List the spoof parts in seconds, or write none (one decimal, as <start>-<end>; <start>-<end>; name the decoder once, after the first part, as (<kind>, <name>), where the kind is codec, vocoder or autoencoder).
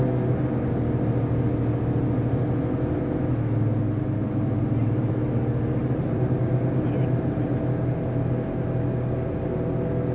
4.2-5.3 (vocoder, BigVGAN v2); 5.8-7.4